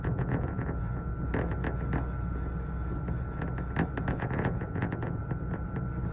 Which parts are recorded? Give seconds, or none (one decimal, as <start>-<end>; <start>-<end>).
1.1-4.1; 5.2-6.1

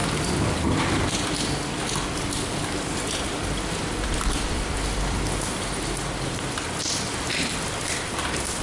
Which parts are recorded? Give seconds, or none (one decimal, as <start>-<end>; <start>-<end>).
0.0-8.6

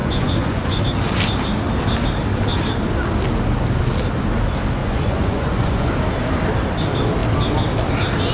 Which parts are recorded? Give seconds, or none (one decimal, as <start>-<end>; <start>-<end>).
0.8-4.8; 5.9-8.3

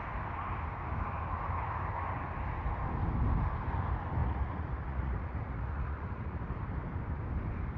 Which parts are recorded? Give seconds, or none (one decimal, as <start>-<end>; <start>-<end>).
0.0-4.2; 6.4-7.8